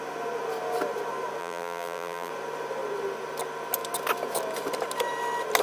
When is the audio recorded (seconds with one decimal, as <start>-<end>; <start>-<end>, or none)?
0.0-1.4; 2.3-5.6